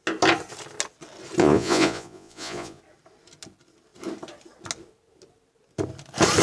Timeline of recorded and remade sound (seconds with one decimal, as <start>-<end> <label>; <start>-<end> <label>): 0.0-1.4 recorded; 1.4-2.8 remade; 2.8-6.4 recorded